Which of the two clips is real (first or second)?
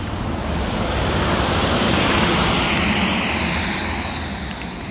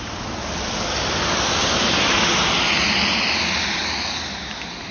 second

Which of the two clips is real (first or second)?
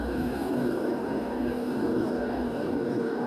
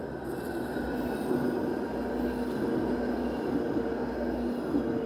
second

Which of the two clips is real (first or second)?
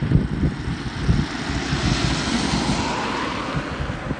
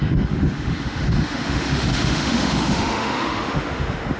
first